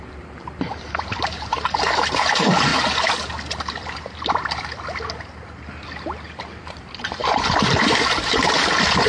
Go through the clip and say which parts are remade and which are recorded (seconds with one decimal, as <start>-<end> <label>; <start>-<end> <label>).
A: 0.0-2.7 remade; 2.7-6.6 recorded; 6.6-9.1 remade